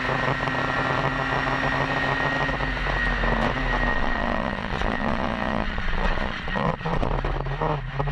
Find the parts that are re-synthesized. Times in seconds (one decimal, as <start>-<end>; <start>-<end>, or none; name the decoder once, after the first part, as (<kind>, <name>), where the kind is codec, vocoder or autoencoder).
3.9-7.1 (vocoder, Vocos)